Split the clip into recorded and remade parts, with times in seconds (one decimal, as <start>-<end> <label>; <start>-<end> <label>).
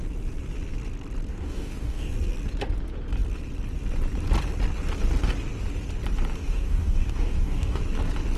0.0-1.3 recorded; 1.3-2.1 remade; 2.1-6.4 recorded; 6.4-7.8 remade; 7.8-8.4 recorded